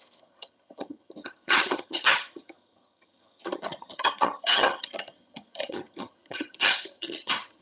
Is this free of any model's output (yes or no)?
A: no